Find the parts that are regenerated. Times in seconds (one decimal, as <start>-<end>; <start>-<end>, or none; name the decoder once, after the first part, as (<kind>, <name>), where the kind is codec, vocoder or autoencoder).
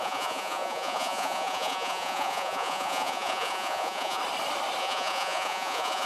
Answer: 0.0-4.2 (vocoder, Vocos); 4.8-6.1